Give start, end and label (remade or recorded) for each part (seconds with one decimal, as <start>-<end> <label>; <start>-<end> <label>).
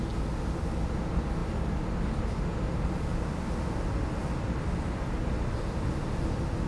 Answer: 0.0-6.7 recorded